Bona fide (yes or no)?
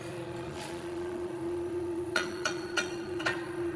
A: no